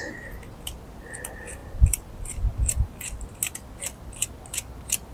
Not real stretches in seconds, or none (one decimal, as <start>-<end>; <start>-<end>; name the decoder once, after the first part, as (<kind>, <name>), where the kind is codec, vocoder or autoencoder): none